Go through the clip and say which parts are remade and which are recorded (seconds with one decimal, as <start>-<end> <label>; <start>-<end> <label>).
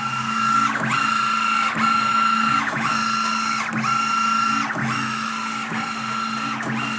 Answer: 0.0-2.1 recorded; 2.1-2.9 remade; 2.9-4.8 recorded; 4.8-5.3 remade; 5.3-7.0 recorded